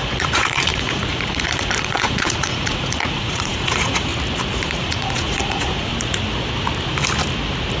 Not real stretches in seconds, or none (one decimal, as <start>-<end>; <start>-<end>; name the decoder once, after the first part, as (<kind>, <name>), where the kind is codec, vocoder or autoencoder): 0.0-4.1 (vocoder, Vocos); 4.8-5.9